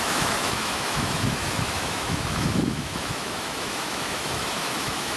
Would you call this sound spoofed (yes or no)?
yes